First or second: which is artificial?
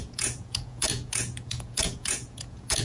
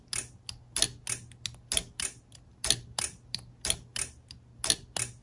first